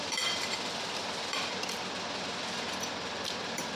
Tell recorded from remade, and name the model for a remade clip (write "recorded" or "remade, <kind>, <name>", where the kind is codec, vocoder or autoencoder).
remade, vocoder, BigVGAN v2